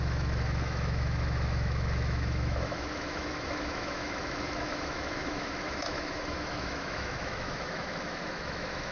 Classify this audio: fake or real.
fake